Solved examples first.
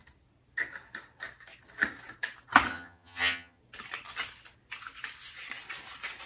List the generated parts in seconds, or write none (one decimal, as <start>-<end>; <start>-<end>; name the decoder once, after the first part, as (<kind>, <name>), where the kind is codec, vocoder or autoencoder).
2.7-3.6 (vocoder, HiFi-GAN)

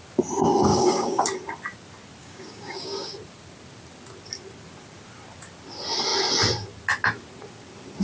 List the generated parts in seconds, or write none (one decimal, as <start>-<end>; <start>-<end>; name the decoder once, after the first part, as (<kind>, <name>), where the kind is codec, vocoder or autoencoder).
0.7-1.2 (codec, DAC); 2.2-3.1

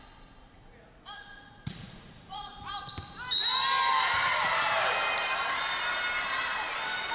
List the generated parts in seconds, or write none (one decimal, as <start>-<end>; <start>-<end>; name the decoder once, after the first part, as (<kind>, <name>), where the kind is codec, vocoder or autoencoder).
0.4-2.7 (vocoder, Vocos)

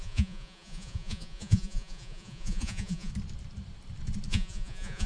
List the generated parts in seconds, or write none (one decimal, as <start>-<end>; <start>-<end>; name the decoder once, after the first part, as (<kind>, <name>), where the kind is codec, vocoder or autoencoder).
0.0-3.1 (vocoder, Vocos); 4.3-5.1

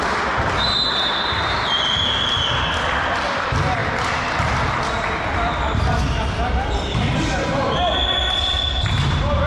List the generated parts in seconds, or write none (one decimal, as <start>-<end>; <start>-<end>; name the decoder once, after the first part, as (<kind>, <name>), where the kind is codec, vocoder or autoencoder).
none

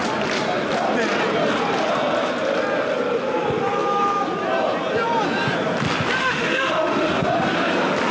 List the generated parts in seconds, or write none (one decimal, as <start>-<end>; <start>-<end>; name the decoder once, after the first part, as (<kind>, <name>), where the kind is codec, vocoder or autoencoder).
6.2-7.1 (autoencoder, DAC-VAE)